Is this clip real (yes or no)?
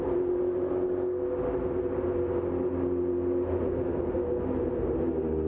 yes